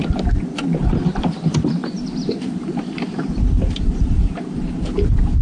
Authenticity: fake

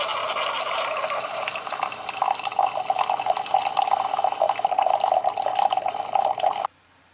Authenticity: real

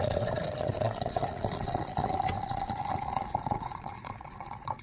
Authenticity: fake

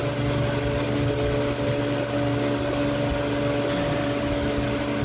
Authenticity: real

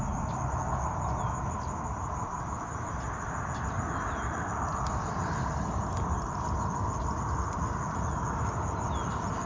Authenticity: real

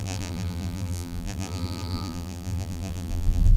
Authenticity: fake